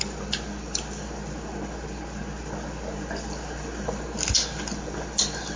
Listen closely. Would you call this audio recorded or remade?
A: recorded